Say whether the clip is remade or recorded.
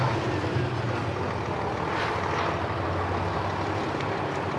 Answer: recorded